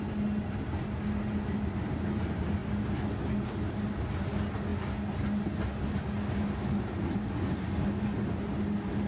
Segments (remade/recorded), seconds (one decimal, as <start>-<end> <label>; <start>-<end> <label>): 0.0-9.1 recorded